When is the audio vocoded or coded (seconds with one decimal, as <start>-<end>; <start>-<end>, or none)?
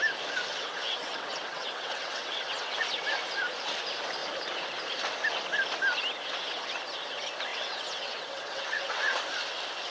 0.5-2.9; 7.5-9.2